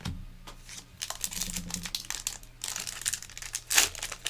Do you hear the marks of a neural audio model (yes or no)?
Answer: no